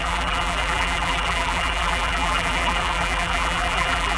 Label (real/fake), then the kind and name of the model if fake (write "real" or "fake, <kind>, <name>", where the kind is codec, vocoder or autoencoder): fake, vocoder, BigVGAN v2